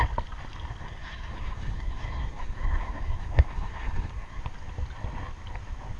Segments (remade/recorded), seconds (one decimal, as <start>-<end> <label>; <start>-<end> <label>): 0.0-0.8 recorded; 0.8-4.4 remade; 4.4-6.0 recorded